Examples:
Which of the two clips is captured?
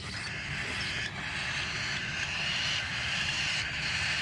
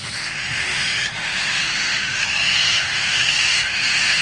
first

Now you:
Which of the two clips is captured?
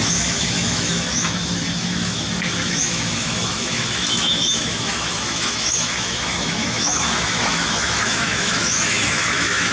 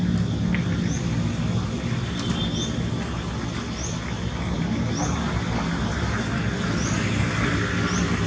second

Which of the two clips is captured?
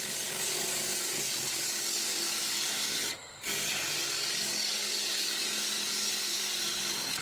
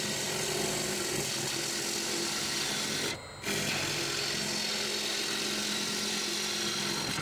second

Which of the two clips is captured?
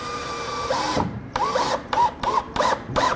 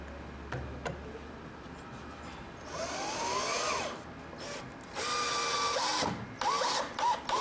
second